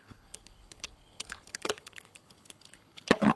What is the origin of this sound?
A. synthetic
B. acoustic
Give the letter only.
A